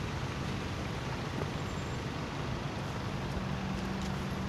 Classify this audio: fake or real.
real